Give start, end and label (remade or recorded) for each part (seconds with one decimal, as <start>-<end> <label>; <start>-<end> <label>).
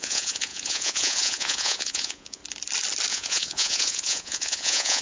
0.0-2.4 remade; 2.4-3.1 recorded; 3.1-5.0 remade